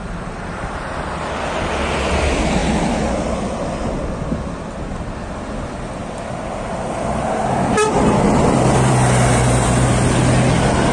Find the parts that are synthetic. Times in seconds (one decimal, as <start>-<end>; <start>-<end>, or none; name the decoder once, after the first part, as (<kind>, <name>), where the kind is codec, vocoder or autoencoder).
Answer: none